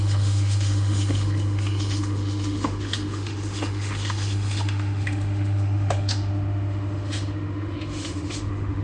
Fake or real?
fake